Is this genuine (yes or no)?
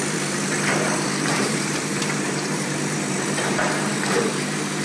no